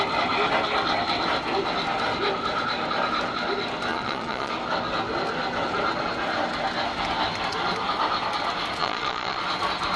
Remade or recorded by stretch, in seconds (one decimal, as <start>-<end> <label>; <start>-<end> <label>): 0.0-3.9 recorded; 3.9-4.5 remade; 4.5-8.8 recorded; 8.8-9.4 remade; 9.4-10.0 recorded